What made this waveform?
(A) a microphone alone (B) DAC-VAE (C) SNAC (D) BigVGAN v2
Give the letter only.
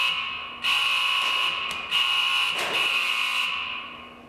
A